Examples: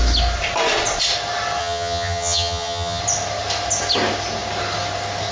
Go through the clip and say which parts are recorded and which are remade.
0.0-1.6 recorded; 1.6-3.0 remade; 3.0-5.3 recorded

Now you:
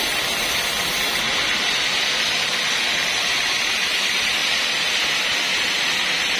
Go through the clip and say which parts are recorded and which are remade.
0.0-6.4 recorded

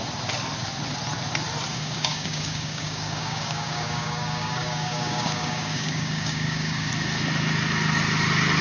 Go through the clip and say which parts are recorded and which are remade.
0.0-1.7 recorded; 1.7-6.9 remade; 6.9-8.6 recorded